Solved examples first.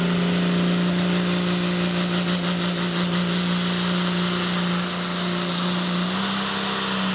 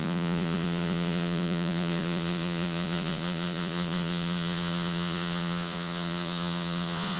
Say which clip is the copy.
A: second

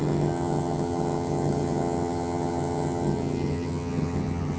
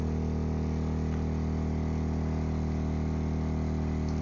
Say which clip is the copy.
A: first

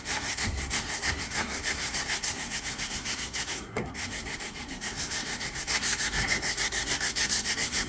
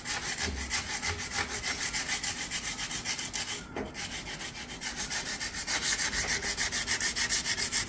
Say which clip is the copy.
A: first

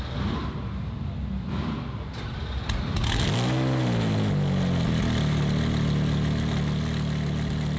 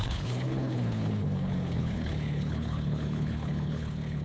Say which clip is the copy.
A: second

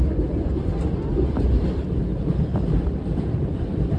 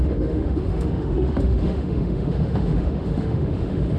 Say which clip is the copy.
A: second